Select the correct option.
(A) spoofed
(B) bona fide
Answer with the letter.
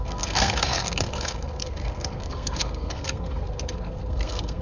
A